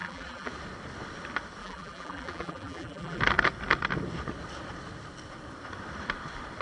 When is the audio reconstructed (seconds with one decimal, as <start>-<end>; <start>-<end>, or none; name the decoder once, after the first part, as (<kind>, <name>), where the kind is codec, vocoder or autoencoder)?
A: 0.0-0.5 (vocoder, BigVGAN v2); 1.6-3.2